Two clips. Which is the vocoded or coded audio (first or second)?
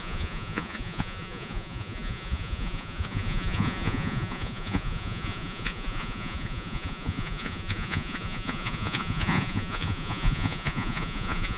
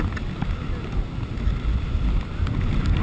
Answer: first